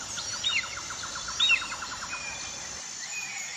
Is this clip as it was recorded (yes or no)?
yes